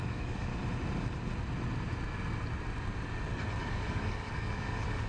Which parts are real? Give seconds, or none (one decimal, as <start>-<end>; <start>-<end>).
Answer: 0.5-3.6